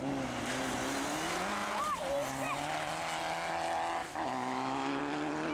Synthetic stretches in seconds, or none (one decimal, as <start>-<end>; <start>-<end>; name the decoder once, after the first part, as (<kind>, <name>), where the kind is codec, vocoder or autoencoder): 4.0-5.0 (autoencoder, DAC-VAE)